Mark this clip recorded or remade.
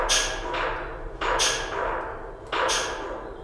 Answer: recorded